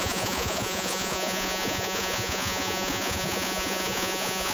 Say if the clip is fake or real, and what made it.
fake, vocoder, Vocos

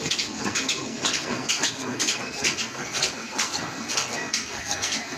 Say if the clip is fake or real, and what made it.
fake, codec, SNAC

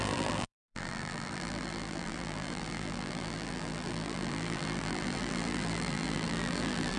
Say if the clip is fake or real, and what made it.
fake, vocoder, BigVGAN v2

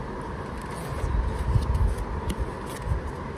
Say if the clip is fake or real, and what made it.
real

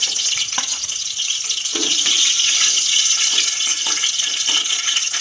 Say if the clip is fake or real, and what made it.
fake, vocoder, Vocos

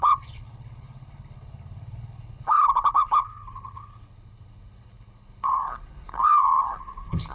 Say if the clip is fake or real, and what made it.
fake, codec, HILCodec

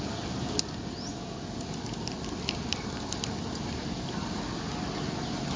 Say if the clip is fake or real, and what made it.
real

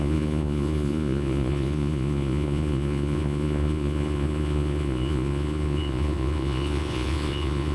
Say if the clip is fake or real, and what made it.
fake, vocoder, Vocos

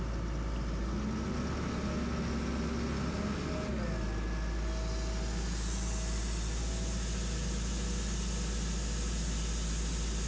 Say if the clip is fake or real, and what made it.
real